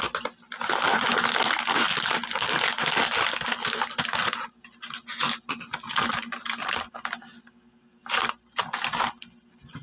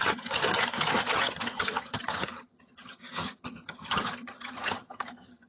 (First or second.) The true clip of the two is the first